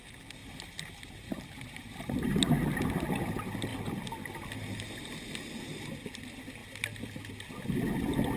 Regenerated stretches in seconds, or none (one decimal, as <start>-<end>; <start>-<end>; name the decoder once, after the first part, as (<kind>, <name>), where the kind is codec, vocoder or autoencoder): 0.4-2.4 (vocoder, BigVGAN v2)

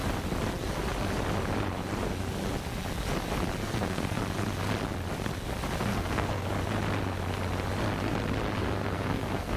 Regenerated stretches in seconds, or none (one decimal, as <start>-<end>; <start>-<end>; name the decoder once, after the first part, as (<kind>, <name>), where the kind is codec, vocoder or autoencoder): 3.6-4.2 (codec, SNAC); 5.9-6.5; 8.6-9.6

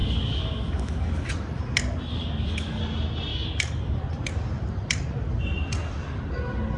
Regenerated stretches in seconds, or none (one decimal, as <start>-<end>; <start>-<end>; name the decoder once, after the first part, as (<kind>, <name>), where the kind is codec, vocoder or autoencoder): 0.0-1.3 (codec, DAC); 2.1-2.8; 3.3-4.0